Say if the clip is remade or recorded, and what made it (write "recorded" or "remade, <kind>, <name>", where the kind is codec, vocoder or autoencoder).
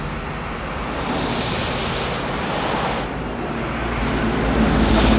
recorded